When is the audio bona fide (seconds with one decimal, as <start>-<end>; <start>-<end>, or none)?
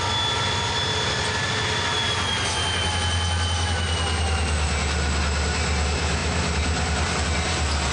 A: 0.0-6.2; 7.1-7.9